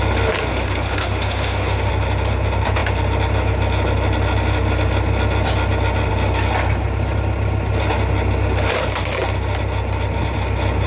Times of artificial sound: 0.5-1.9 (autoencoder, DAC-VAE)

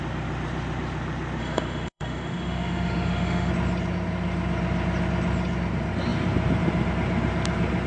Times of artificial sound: 1.4-3.5 (autoencoder, DAC-VAE)

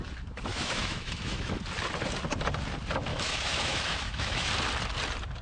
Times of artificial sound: 0.5-1.6 (autoencoder, DAC-VAE); 3.1-4.5

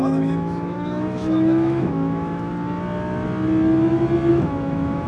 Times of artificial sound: 0.0-2.5 (autoencoder, DAC-VAE); 4.3-5.1